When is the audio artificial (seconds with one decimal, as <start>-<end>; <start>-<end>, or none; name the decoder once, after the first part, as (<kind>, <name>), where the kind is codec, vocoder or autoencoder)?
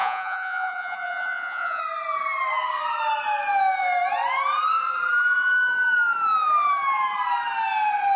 0.0-1.8 (vocoder, Vocos)